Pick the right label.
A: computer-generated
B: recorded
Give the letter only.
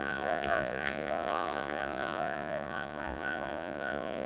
A